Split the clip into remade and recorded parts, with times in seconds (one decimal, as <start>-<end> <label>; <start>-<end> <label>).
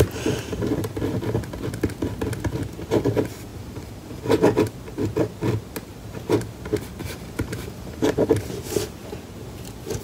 0.0-3.5 recorded; 3.5-4.2 remade; 4.2-7.0 recorded; 7.0-8.3 remade; 8.3-10.0 recorded